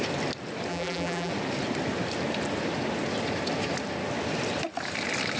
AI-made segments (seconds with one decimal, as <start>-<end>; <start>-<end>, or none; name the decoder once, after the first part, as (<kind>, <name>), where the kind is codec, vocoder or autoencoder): 0.7-1.3 (vocoder, BigVGAN v2)